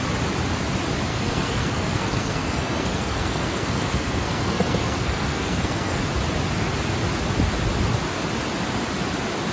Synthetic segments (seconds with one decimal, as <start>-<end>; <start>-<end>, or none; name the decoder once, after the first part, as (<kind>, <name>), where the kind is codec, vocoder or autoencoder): 1.1-6.0 (codec, SNAC)